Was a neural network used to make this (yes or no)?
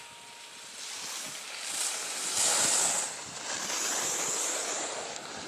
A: no